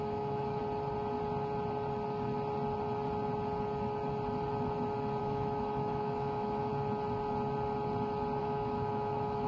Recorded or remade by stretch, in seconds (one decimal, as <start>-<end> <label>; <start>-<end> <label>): 0.0-0.6 remade; 0.6-5.2 recorded; 5.2-6.7 remade; 6.7-8.4 recorded; 8.4-9.5 remade